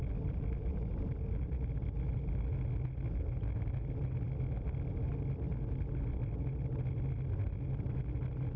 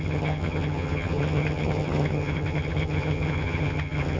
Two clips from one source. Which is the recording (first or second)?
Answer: first